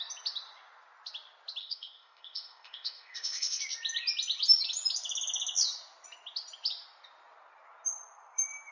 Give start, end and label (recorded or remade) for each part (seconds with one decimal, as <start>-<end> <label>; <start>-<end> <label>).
0.0-1.6 recorded; 1.6-3.6 remade; 3.6-8.7 recorded